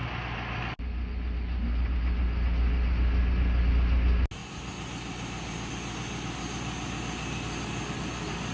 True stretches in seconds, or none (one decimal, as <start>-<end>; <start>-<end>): 0.0-8.5